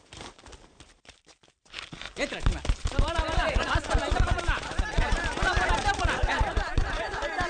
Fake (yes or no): yes